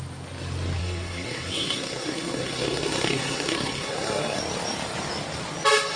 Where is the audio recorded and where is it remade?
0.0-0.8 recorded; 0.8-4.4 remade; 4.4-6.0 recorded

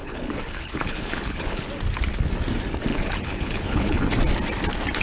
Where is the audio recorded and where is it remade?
0.0-1.7 remade; 1.7-2.9 recorded; 2.9-4.0 remade; 4.0-5.0 recorded